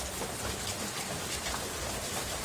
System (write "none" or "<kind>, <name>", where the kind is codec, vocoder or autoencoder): vocoder, BigVGAN v2